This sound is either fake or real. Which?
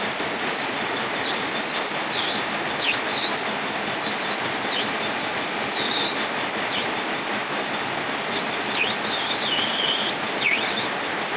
real